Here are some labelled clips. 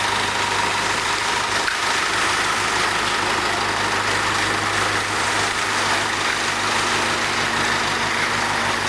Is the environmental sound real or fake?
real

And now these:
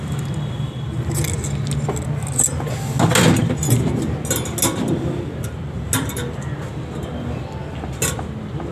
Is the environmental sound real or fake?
real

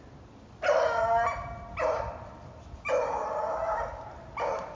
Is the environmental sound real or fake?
real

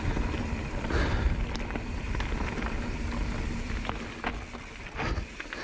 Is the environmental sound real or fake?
real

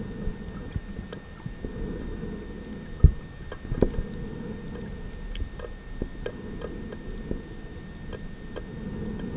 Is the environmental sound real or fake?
real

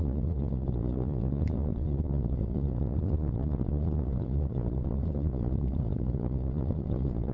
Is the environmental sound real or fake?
fake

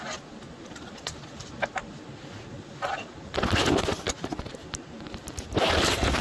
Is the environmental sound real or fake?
real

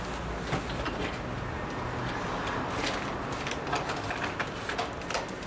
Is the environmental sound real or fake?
real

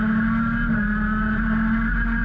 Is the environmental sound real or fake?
real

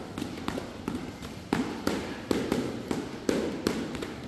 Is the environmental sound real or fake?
real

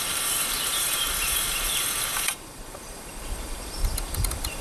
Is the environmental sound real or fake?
fake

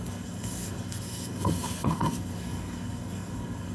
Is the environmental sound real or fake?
fake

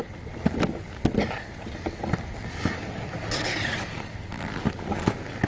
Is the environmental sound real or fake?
real